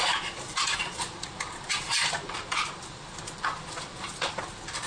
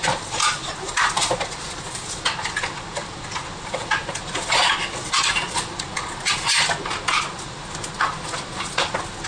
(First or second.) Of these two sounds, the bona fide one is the second